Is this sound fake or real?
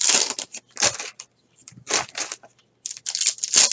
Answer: real